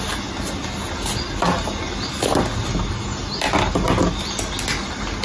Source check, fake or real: real